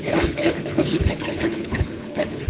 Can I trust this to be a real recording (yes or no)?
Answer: no